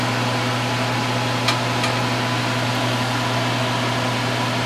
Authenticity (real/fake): real